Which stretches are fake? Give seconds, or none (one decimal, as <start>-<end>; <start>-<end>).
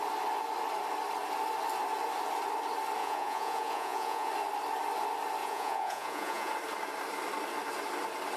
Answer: 3.0-4.3; 5.4-6.5